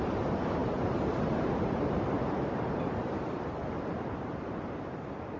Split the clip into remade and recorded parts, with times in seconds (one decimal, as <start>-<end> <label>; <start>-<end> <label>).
0.0-5.4 remade